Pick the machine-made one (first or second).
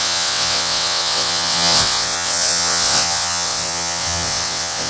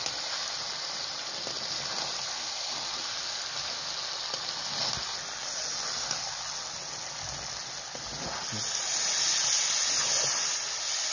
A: first